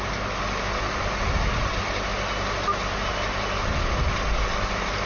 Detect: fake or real real